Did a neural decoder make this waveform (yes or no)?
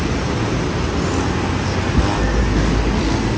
no